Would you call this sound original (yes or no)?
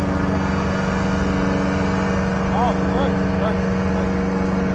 yes